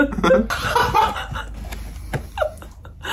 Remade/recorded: recorded